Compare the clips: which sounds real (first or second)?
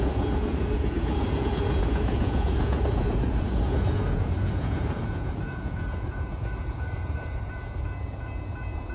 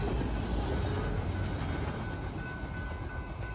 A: second